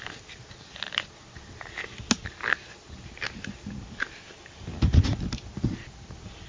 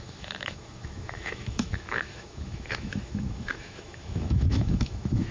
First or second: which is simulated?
second